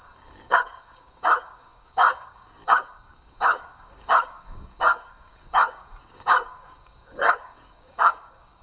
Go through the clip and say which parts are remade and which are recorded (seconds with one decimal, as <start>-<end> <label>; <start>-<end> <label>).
0.0-8.6 remade